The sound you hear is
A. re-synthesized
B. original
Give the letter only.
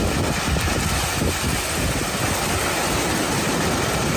B